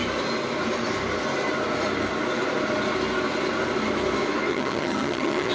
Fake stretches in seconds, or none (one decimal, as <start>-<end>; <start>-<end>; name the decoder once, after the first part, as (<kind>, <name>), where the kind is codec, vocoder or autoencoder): 4.5-5.5 (vocoder, HiFi-GAN)